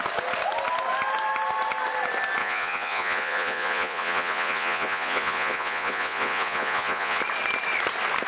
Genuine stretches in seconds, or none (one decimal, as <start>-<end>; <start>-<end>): 0.0-2.4; 7.2-8.3